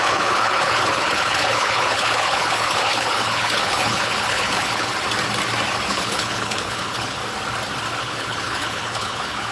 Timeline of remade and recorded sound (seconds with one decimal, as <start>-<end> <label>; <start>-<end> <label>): 0.0-4.9 remade; 4.9-5.9 recorded; 5.9-7.2 remade; 7.2-8.0 recorded; 8.0-9.5 remade